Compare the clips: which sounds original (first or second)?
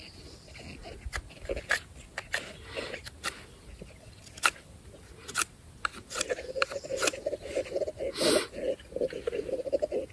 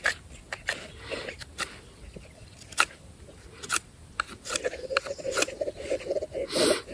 first